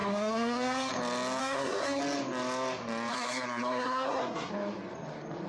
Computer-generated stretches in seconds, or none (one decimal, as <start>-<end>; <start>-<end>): 0.0-0.9; 1.4-2.0; 3.1-4.5